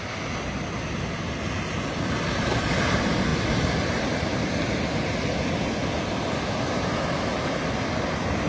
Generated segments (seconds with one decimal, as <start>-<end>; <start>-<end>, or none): none